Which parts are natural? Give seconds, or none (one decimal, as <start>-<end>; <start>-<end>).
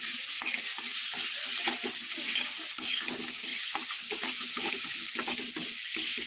0.0-6.3